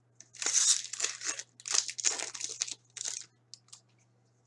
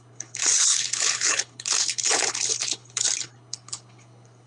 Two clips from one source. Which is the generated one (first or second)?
second